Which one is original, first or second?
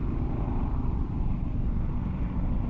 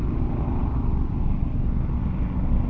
second